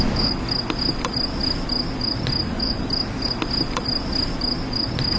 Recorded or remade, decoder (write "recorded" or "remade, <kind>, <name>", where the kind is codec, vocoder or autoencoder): recorded